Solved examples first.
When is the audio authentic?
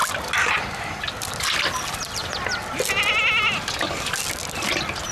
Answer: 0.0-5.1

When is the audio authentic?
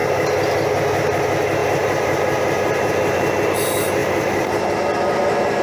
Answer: 0.0-1.6; 3.3-4.0; 4.6-5.6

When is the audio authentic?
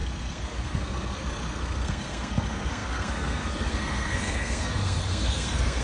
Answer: none